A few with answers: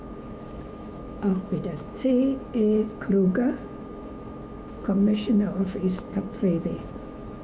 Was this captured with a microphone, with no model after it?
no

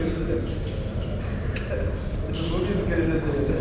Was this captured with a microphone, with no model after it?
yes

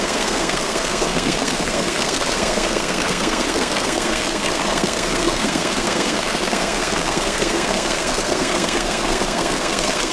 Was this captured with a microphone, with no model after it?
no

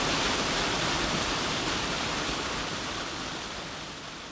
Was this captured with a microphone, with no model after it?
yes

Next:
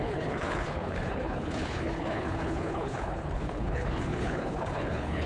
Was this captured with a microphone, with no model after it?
no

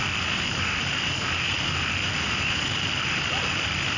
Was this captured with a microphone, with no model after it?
yes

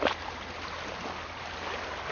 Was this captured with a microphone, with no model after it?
yes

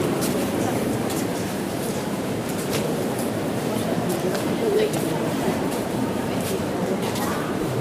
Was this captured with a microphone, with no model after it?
no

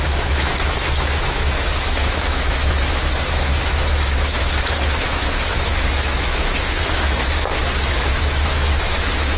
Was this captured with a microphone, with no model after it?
no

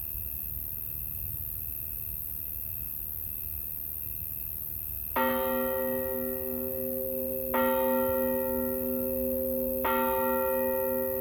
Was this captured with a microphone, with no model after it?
yes